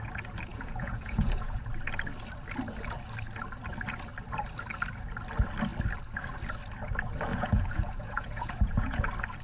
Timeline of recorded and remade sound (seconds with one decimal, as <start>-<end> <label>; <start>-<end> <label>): 0.0-0.5 recorded; 0.5-1.7 remade; 1.7-7.3 recorded; 7.3-9.0 remade; 9.0-9.4 recorded